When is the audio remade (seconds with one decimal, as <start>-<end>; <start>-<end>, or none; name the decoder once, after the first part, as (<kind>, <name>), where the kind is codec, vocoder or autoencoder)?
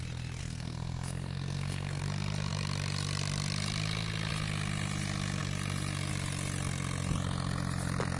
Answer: 0.4-2.0 (codec, SNAC)